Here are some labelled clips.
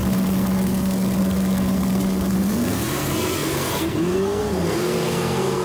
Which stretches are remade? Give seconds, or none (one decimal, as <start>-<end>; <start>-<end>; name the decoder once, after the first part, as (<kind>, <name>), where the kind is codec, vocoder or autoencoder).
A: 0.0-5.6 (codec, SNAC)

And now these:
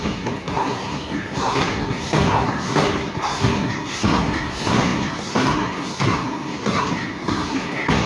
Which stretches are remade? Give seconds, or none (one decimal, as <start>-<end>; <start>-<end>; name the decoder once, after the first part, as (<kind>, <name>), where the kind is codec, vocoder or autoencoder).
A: 0.0-8.1 (codec, SNAC)

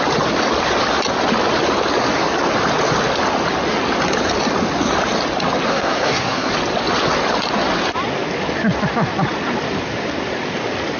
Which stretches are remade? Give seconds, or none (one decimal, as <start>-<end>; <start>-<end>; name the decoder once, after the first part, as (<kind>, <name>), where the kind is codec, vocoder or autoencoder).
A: 5.7-6.5 (codec, SNAC)

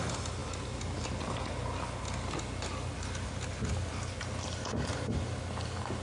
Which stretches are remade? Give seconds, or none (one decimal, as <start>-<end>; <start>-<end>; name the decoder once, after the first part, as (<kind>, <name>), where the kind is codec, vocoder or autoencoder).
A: none

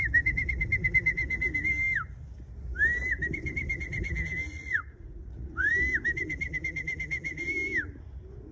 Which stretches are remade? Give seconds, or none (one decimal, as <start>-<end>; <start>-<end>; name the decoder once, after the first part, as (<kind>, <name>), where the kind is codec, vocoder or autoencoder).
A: 4.5-5.7 (vocoder, Vocos)

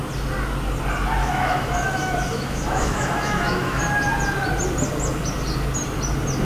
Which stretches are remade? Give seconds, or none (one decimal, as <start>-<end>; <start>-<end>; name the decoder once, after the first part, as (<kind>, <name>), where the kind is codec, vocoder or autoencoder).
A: 1.2-3.8 (autoencoder, DAC-VAE)